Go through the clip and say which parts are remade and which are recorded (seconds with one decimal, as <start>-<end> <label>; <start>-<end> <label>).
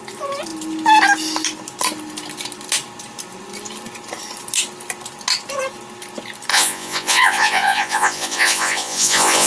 0.0-6.5 recorded; 6.5-9.5 remade